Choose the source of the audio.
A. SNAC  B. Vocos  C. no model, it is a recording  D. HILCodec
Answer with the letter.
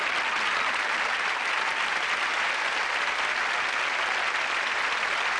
C